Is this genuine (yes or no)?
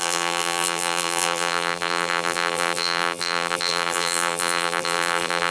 no